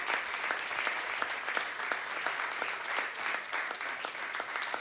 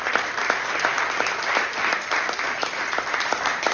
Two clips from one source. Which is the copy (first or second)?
second